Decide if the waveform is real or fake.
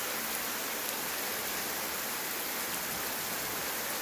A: real